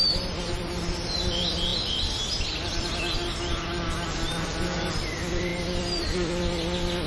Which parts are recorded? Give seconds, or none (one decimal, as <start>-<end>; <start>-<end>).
0.0-7.1